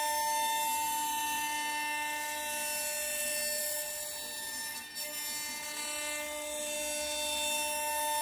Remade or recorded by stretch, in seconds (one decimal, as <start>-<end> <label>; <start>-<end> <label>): 0.0-8.2 recorded